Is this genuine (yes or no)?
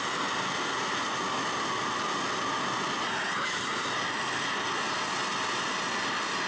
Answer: yes